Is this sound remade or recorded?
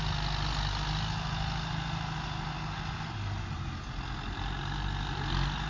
recorded